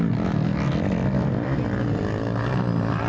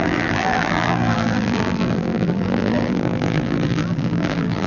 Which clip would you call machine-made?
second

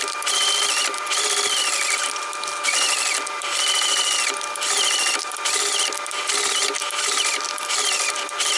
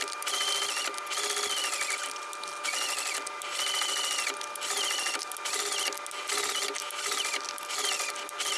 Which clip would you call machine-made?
first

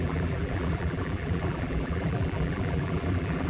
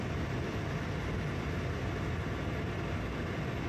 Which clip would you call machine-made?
first